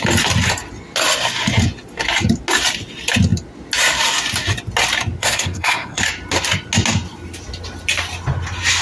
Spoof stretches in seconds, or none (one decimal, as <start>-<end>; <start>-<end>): 5.2-6.0